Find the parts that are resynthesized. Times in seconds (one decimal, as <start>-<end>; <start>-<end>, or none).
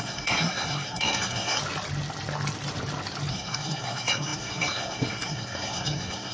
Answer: 0.0-1.6; 3.3-6.3